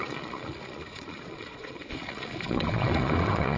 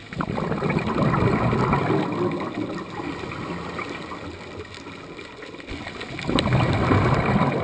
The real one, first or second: second